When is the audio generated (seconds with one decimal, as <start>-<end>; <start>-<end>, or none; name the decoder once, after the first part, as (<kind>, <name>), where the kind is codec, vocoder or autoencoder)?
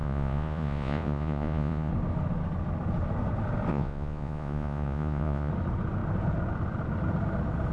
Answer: 0.0-1.9 (vocoder, Vocos); 3.7-5.5